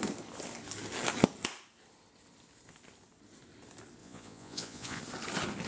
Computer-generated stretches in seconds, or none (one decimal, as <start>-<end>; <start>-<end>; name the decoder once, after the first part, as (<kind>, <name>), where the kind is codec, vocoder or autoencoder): 4.0-5.0 (vocoder, Vocos)